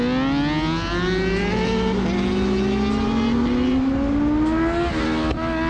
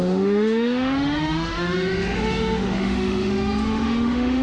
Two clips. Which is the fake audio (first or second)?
second